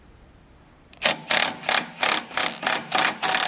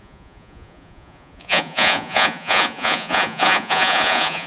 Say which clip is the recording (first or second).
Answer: first